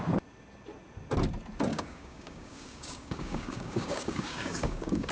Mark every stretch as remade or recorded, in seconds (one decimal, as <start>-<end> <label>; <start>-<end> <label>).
0.0-1.7 recorded; 1.7-5.1 remade